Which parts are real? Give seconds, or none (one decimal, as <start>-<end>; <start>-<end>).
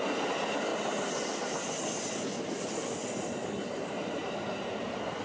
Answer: 0.0-5.2